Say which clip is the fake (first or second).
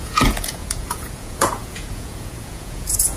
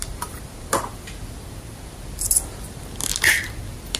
first